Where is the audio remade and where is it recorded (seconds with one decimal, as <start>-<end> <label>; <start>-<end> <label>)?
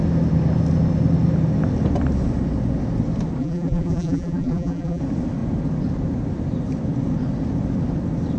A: 0.0-3.4 recorded; 3.4-5.0 remade; 5.0-8.4 recorded